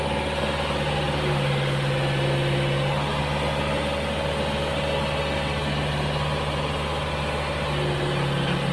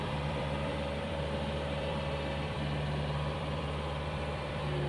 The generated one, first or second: second